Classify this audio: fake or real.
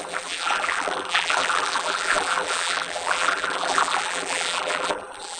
fake